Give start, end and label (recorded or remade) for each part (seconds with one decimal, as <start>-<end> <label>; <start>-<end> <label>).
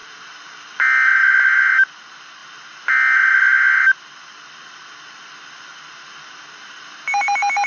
0.0-7.7 recorded